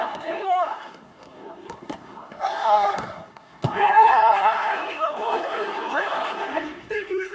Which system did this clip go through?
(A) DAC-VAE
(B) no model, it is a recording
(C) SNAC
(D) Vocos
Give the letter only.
C